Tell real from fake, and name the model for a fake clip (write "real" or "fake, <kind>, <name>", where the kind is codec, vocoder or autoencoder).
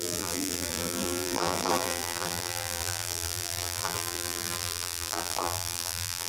fake, vocoder, BigVGAN v2